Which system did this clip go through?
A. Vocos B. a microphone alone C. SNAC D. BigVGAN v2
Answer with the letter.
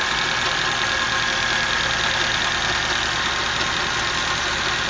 B